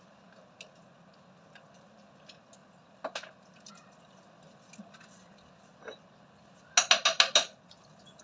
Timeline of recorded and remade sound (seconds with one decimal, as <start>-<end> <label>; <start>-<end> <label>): 0.0-8.2 recorded